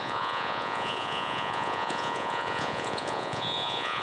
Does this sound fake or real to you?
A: fake